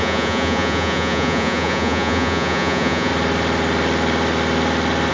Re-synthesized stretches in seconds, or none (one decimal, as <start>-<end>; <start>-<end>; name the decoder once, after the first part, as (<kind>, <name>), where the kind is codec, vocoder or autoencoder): 0.0-3.1 (vocoder, Vocos)